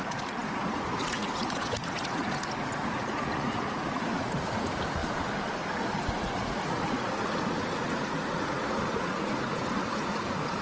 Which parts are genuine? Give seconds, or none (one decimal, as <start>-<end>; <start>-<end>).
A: 5.0-5.5

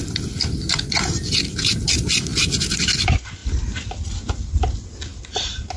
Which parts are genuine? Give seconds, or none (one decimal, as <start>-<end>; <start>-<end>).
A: 0.0-5.8

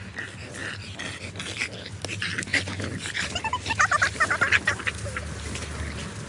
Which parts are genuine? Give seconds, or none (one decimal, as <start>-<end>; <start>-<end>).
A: 0.0-6.3

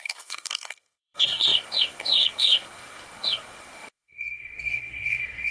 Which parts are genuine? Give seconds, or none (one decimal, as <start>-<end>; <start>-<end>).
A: none

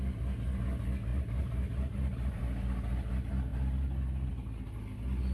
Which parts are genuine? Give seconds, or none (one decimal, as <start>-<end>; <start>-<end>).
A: 0.0-1.1; 2.4-3.5; 4.3-5.3

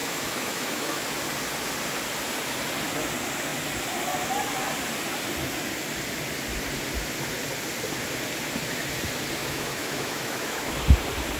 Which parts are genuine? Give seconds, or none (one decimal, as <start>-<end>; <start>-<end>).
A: 1.0-9.4; 10.8-11.4

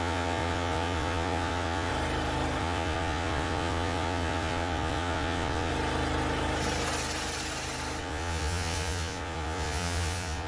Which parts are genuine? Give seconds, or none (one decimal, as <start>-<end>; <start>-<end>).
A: 1.9-2.6; 5.7-8.0

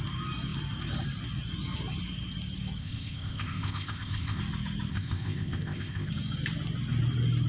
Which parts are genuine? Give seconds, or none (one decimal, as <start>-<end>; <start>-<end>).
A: 0.0-2.8; 4.4-4.9; 6.1-7.5